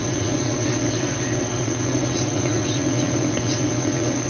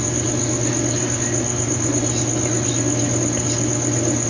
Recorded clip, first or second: second